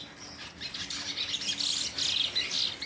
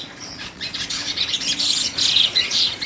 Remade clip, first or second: second